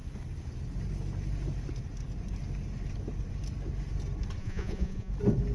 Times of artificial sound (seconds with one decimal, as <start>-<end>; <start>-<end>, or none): 4.4-5.1